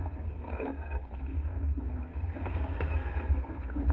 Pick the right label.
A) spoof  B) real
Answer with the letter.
A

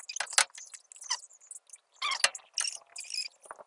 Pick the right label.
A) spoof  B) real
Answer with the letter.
B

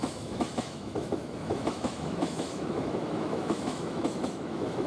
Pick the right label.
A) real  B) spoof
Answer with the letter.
B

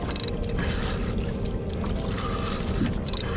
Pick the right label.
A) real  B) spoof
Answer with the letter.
A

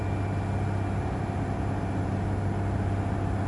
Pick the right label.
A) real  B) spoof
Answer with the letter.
A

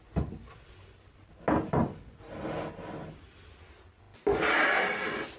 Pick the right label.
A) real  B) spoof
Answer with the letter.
A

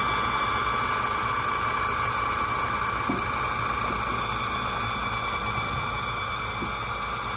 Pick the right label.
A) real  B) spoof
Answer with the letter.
A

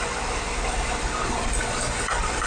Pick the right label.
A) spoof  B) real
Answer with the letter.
B